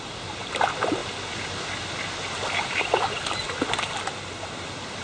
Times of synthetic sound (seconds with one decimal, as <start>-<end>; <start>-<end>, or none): none